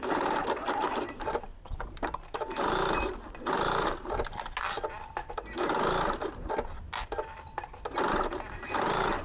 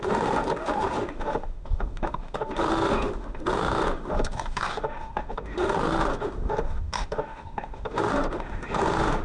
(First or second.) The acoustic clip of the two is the first